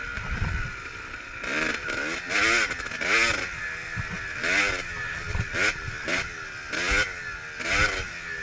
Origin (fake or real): real